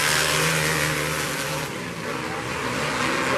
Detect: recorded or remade recorded